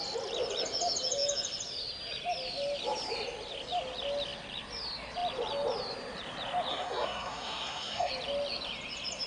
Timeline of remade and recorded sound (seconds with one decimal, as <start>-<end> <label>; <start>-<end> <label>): 0.0-6.7 recorded; 6.7-8.1 remade; 8.1-9.3 recorded